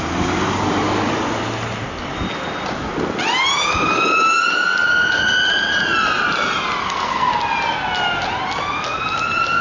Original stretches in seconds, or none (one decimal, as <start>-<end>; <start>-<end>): 0.0-6.8; 7.3-9.6